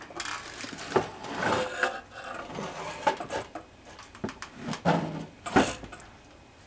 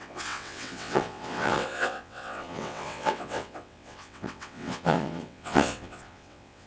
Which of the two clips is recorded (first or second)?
first